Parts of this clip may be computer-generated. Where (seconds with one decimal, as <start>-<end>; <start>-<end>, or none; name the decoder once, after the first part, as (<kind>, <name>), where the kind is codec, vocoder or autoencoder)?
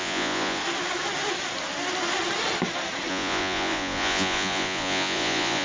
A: 0.0-0.6 (vocoder, Vocos); 3.1-5.6